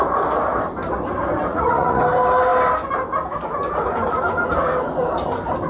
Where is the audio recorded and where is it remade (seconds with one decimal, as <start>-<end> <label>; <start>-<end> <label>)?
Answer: 0.0-1.5 recorded; 1.5-2.0 remade; 2.0-5.7 recorded